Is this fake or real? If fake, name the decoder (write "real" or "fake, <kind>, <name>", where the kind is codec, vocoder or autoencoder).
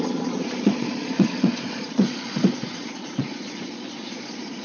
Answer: fake, vocoder, Vocos